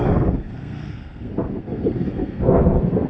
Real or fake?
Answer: fake